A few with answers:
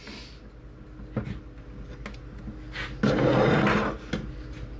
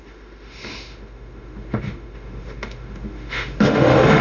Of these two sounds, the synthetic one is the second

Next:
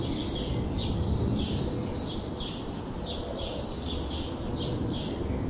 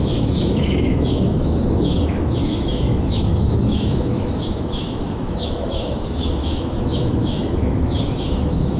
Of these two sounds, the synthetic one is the second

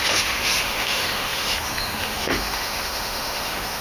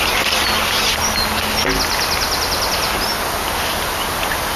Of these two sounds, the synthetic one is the first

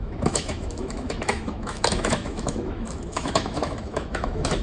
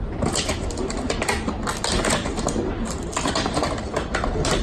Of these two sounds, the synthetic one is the first